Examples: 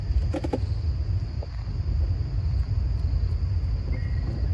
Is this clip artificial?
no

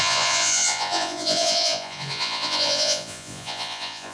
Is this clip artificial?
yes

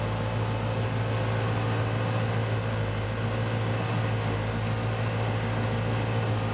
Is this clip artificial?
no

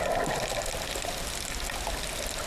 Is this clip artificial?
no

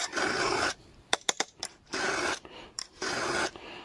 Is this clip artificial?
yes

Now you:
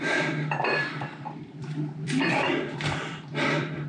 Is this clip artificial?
yes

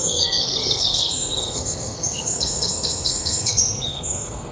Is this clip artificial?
yes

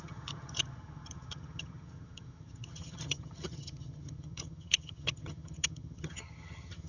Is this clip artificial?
yes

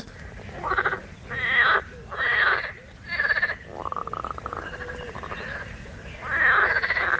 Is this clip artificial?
no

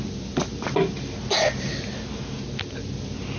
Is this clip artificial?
no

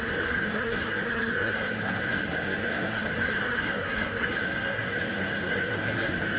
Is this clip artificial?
yes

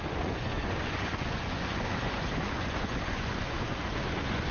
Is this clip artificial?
yes